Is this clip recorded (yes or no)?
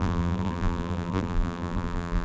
no